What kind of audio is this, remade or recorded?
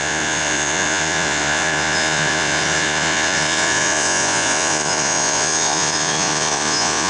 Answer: remade